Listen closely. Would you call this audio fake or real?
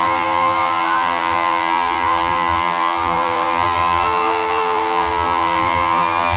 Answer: fake